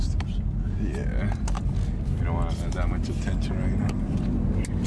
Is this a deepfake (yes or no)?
no